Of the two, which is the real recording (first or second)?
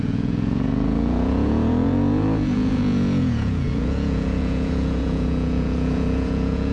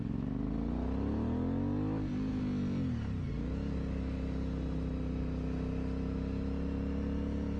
second